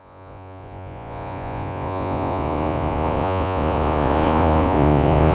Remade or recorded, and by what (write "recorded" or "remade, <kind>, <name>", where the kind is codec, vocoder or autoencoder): remade, vocoder, Vocos